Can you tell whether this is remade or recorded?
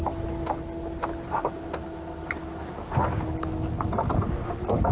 recorded